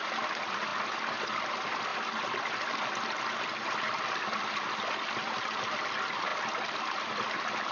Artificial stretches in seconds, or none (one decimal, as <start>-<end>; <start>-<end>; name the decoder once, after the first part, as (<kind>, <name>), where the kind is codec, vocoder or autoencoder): none